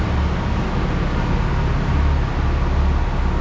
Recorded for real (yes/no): yes